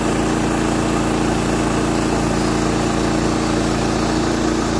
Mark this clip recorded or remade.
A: recorded